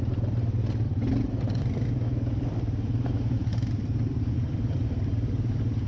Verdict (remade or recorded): remade